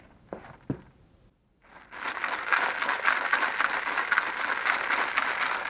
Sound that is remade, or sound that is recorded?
recorded